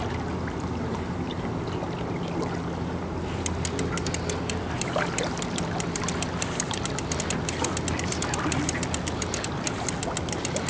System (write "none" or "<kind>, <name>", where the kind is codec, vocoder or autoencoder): none